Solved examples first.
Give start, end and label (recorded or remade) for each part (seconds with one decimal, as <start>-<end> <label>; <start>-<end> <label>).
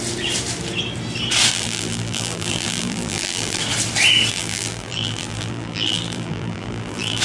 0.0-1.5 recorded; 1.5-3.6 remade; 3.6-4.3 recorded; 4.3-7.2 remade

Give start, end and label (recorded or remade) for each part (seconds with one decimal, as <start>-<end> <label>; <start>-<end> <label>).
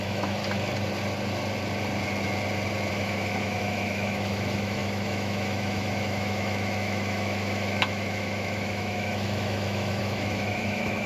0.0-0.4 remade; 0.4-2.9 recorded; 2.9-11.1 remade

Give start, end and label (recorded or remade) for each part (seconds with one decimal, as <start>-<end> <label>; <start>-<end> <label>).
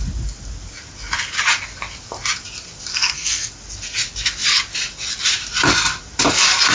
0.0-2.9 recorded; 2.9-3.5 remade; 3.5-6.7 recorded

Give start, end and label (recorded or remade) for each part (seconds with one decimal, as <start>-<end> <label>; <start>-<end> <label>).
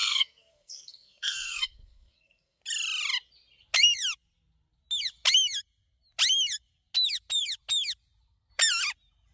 0.0-2.6 remade; 2.6-9.3 recorded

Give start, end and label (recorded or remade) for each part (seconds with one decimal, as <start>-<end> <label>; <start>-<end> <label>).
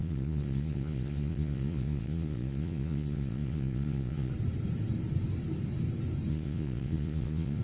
0.0-4.3 remade; 4.3-6.3 recorded; 6.3-7.6 remade